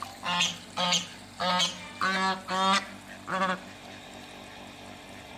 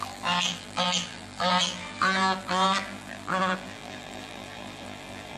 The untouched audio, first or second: first